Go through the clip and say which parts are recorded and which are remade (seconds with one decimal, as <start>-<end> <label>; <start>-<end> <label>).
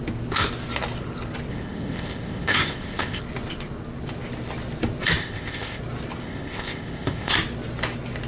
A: 0.0-1.5 recorded; 1.5-3.2 remade; 3.2-5.2 recorded; 5.2-5.8 remade; 5.8-6.2 recorded; 6.2-7.3 remade; 7.3-8.3 recorded